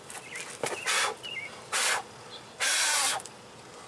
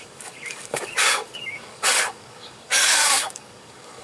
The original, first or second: first